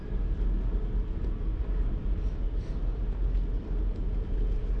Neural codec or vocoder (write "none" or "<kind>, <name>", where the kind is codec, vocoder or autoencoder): none